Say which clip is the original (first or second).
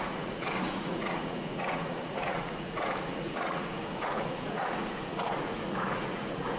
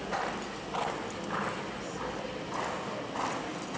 second